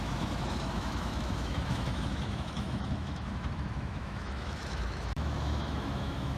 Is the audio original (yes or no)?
no